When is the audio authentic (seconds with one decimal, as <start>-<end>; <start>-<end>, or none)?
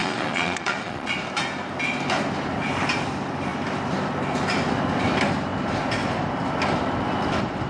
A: 1.1-7.7